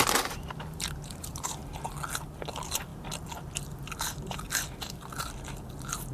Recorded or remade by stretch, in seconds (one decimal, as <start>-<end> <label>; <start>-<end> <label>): 0.0-1.6 remade; 1.6-2.5 recorded; 2.5-2.9 remade; 2.9-4.0 recorded; 4.0-6.1 remade